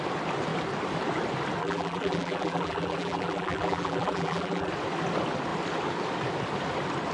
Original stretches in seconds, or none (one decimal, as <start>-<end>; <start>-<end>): 0.0-1.6; 4.7-7.1